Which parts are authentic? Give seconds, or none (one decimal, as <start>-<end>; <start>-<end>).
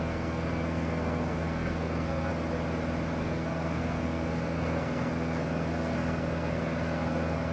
2.3-3.2